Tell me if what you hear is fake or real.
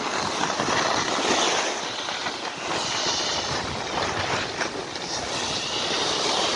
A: real